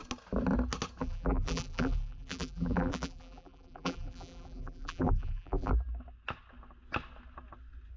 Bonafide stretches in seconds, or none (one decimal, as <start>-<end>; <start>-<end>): 0.0-1.0; 5.7-8.0

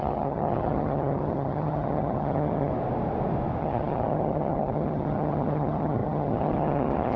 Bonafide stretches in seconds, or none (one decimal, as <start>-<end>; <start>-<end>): 2.7-3.6

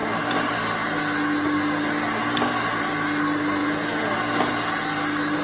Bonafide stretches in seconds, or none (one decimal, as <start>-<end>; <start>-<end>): 0.0-3.6; 4.1-5.4

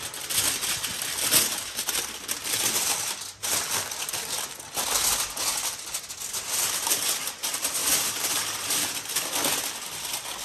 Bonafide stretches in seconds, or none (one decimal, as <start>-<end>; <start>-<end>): 0.0-7.8; 8.9-10.4

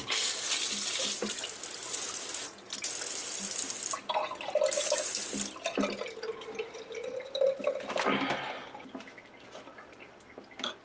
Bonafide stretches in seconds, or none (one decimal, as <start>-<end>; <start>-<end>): 0.0-7.0; 7.6-10.8

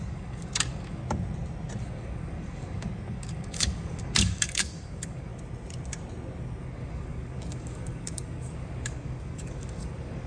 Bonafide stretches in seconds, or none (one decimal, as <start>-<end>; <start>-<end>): 1.0-1.8; 5.3-6.6